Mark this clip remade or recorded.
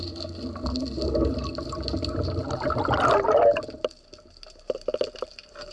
recorded